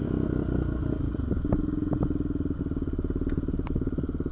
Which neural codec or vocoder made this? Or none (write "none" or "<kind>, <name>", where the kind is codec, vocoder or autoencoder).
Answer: none